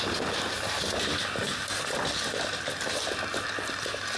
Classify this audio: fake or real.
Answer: real